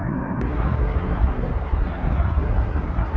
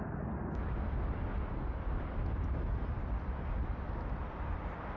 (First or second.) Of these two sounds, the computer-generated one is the first